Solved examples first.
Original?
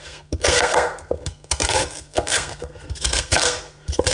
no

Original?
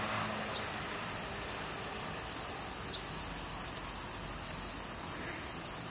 yes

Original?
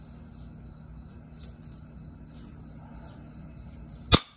yes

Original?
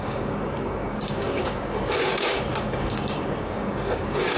no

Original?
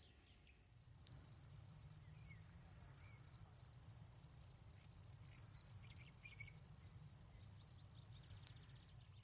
no